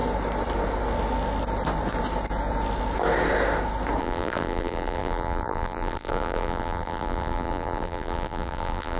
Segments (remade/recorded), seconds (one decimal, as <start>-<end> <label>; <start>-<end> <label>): 0.0-4.0 recorded; 4.0-9.0 remade